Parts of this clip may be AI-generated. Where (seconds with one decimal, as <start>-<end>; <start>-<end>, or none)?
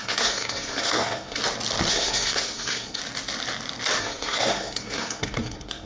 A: 0.0-1.4; 1.9-3.0; 4.0-5.9